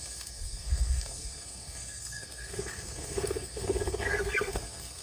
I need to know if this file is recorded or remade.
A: remade